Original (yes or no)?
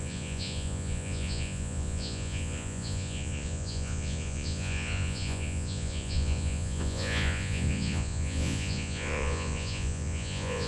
no